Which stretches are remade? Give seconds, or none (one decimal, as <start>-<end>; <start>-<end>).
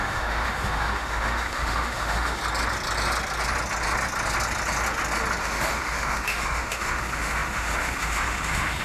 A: 0.0-2.4; 5.4-8.8